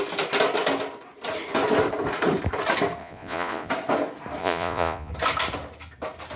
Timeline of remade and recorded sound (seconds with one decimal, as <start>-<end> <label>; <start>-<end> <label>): 0.0-3.0 recorded; 3.0-3.7 remade; 3.7-4.4 recorded; 4.4-5.1 remade; 5.1-6.4 recorded